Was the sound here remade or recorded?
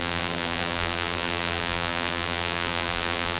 remade